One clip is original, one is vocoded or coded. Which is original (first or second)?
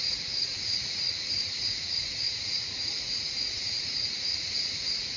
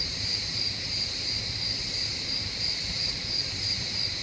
second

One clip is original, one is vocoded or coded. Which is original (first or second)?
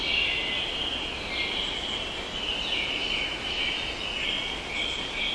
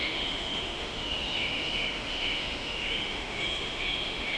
first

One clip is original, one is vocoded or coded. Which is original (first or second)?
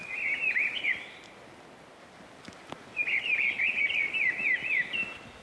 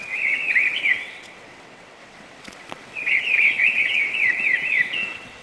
first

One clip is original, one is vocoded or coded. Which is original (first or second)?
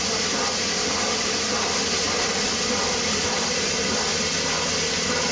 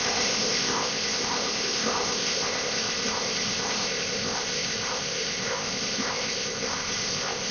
first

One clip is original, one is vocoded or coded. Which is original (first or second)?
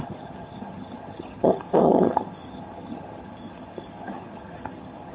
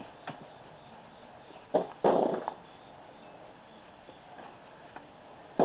second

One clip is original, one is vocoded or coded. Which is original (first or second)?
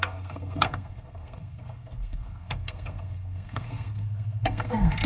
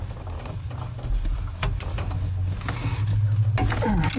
second